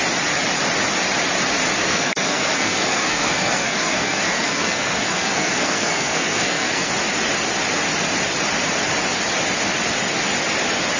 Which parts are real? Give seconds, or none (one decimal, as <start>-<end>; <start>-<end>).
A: 0.0-1.8; 6.9-11.0